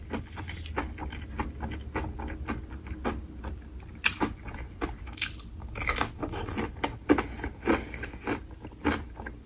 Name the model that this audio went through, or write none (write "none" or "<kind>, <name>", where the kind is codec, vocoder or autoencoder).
none